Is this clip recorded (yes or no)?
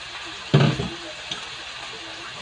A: yes